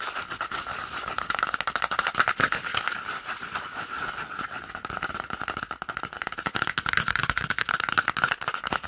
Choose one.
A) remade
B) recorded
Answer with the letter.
B